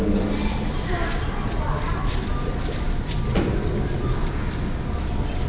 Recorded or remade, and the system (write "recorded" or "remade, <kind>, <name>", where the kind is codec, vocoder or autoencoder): recorded